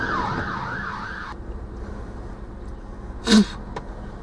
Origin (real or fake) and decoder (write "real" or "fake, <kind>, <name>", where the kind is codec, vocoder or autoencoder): real